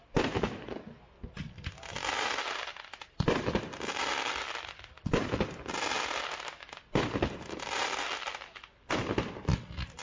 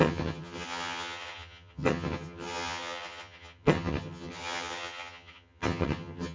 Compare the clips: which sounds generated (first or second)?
second